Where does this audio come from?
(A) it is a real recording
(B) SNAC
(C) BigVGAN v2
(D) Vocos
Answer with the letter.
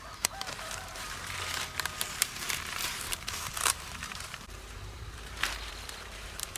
C